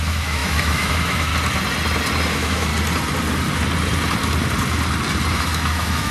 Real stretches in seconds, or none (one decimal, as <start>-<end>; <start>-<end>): 1.3-2.3; 2.7-5.3